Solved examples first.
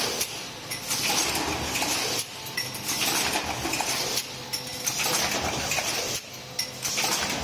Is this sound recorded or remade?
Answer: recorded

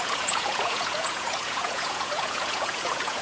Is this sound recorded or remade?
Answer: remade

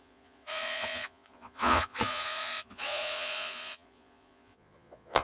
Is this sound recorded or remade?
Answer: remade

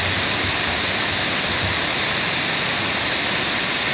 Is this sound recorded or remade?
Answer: recorded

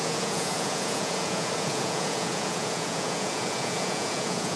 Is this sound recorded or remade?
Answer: remade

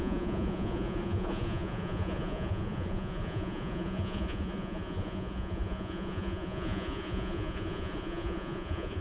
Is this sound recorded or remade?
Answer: remade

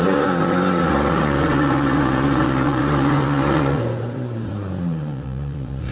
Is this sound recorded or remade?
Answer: remade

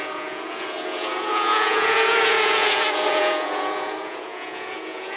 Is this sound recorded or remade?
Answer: remade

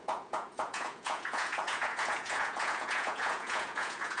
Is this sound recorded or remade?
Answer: remade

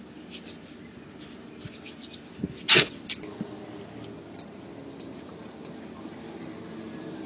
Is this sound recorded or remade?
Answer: recorded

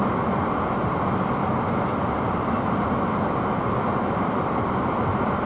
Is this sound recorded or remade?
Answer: recorded